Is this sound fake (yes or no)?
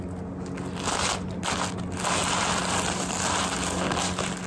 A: no